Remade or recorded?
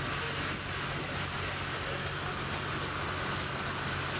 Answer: recorded